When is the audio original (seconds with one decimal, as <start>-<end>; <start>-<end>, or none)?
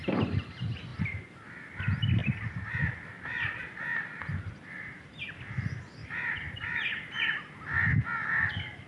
0.0-2.2; 5.2-6.0; 7.6-8.9